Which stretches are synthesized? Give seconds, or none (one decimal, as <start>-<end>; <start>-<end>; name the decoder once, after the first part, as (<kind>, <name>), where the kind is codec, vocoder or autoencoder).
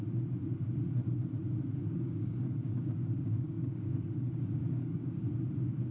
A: 1.8-5.3 (codec, DAC)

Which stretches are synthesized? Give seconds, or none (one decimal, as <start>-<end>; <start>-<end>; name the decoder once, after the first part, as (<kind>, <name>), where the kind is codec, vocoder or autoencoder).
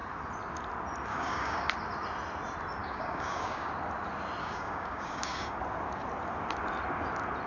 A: 1.1-1.7 (codec, DAC); 2.8-3.7; 4.4-5.6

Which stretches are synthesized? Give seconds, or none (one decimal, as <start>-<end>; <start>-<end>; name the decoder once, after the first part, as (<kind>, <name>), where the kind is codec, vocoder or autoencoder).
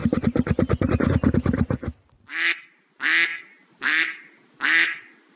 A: none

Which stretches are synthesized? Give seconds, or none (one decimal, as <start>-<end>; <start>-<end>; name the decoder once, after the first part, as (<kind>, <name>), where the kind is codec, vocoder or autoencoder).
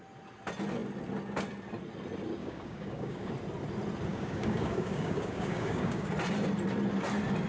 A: 2.4-3.3 (codec, DAC); 4.1-6.1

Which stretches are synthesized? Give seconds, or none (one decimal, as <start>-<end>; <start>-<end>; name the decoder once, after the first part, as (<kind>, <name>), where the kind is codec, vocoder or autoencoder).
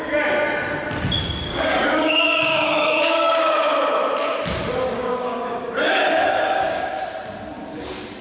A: 1.2-3.4 (codec, DAC); 4.9-7.0